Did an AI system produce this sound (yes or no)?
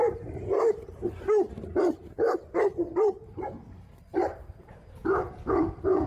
yes